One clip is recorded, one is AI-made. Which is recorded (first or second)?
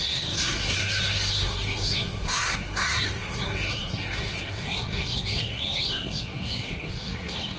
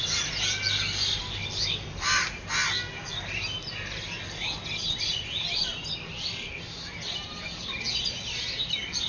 second